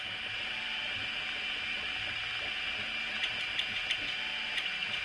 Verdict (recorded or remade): recorded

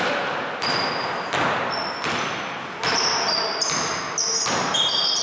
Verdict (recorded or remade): recorded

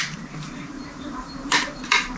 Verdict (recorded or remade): remade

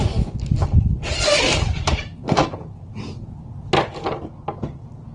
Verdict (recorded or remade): recorded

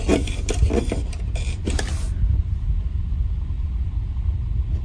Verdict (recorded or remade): recorded